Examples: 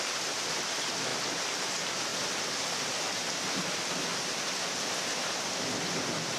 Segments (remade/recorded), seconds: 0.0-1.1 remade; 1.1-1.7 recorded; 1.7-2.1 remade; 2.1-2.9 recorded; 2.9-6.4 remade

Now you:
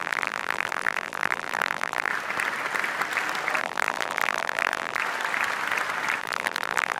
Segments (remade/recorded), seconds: 0.0-2.1 remade; 2.1-3.6 recorded; 3.6-5.0 remade; 5.0-6.2 recorded; 6.2-7.0 remade

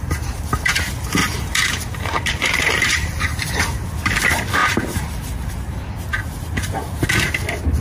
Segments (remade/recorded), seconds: 0.0-1.2 recorded; 1.2-3.2 remade; 3.2-4.6 recorded; 4.6-5.9 remade; 5.9-7.8 recorded

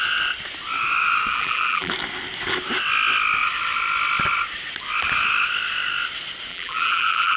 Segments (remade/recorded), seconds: 0.0-1.3 recorded; 1.3-1.9 remade; 1.9-6.5 recorded; 6.5-7.4 remade

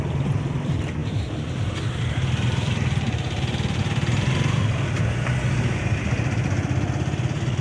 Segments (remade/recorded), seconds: 0.0-1.0 recorded; 1.0-4.6 remade; 4.6-7.6 recorded

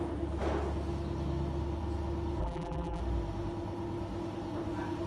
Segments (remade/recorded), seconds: 0.0-2.4 recorded; 2.4-3.0 remade; 3.0-5.1 recorded